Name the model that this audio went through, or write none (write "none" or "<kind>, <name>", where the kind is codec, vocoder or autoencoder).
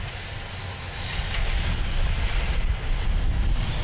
none